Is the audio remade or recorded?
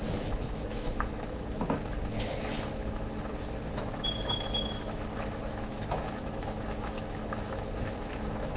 remade